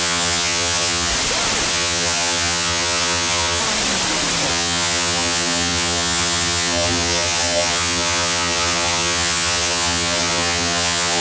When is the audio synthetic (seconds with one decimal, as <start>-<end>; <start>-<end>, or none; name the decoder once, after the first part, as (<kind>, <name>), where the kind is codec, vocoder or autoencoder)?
0.0-1.1 (vocoder, HiFi-GAN); 1.7-3.6; 4.5-11.2